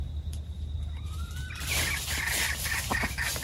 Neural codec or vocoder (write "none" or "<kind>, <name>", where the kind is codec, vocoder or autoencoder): none